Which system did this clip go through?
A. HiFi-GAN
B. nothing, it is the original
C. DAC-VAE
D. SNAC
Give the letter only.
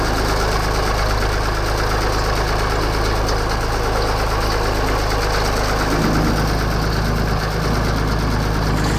B